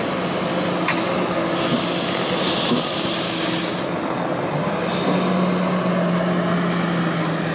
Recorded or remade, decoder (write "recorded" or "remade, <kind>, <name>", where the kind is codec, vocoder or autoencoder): recorded